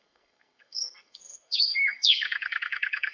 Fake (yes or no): yes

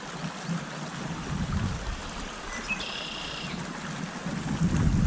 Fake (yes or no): no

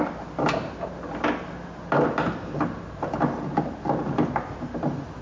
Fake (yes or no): no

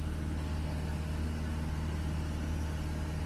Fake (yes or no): no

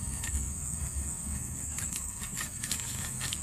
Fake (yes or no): yes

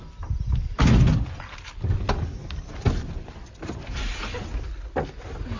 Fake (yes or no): no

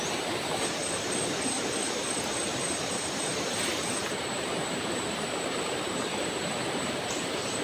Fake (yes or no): yes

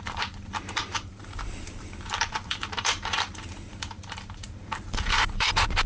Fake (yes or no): yes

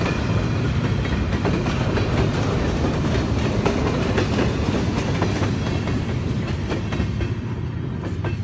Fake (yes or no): no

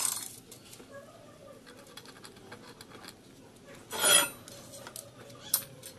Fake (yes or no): no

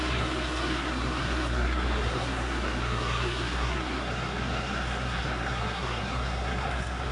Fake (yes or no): yes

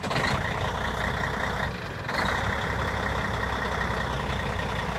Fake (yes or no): no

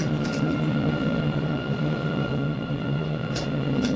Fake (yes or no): yes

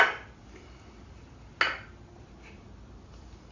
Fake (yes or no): no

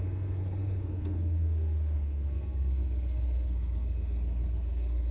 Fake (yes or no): yes